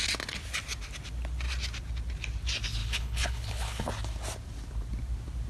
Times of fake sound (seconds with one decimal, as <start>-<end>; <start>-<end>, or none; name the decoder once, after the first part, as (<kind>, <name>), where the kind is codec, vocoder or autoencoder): 2.8-3.9 (codec, HILCodec)